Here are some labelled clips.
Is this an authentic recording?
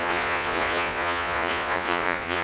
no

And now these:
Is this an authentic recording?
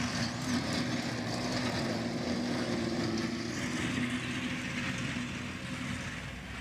yes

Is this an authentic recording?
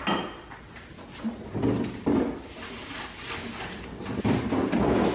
yes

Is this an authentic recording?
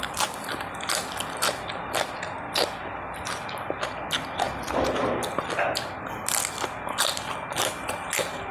yes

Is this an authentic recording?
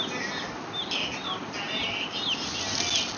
yes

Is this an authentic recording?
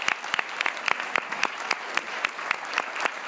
yes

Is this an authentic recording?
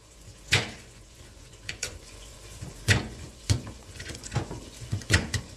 no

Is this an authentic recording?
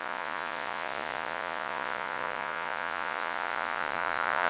no